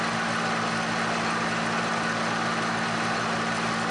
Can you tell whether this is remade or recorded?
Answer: recorded